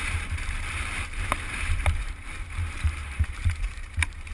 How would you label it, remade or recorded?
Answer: remade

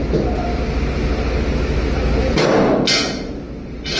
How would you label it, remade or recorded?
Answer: recorded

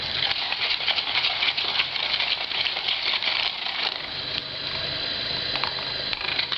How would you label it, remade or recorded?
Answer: remade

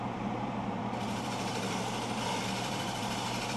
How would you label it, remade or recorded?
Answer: remade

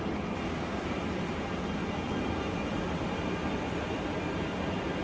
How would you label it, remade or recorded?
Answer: recorded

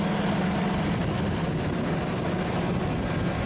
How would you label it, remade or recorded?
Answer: recorded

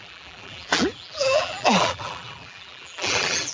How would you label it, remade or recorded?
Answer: remade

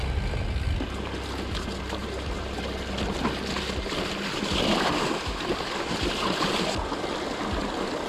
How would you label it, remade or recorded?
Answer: recorded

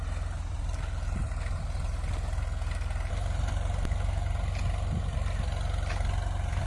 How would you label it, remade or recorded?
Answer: recorded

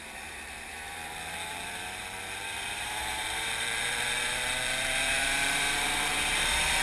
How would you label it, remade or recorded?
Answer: remade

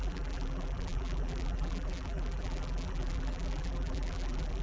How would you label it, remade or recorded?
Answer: remade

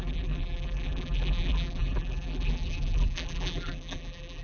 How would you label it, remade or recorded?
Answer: remade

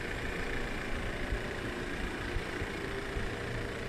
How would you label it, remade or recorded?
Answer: remade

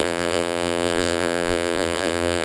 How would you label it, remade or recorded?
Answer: remade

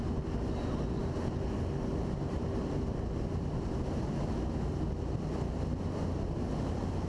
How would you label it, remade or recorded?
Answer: recorded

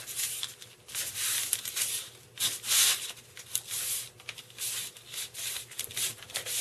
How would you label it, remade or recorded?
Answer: recorded